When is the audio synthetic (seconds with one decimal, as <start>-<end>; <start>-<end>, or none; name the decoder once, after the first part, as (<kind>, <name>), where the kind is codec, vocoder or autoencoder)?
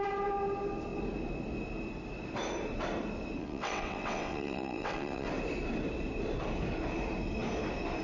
3.4-5.3 (vocoder, WaveNeXt)